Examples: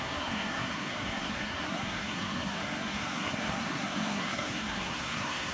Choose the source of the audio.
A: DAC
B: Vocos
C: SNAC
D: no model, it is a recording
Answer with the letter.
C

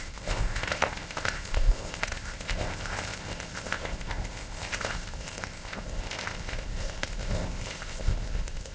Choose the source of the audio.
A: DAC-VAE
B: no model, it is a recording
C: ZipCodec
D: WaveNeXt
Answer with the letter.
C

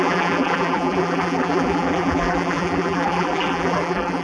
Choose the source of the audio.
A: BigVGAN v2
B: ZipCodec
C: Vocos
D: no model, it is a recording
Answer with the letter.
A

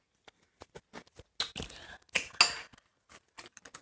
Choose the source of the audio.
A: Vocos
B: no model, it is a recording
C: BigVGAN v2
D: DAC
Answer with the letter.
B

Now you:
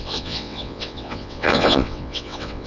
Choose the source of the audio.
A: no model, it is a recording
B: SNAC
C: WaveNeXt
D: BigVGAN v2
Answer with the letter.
C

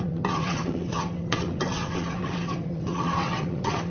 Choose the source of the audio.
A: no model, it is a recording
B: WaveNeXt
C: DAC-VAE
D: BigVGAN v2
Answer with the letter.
B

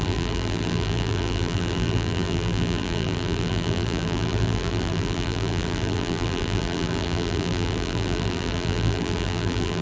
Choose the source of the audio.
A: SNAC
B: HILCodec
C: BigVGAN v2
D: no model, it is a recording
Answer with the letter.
C